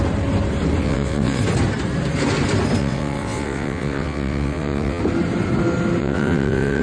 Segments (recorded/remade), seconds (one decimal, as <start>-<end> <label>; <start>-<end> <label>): 0.0-0.8 recorded; 0.8-1.4 remade; 1.4-2.8 recorded; 2.8-5.0 remade; 5.0-6.0 recorded; 6.0-6.8 remade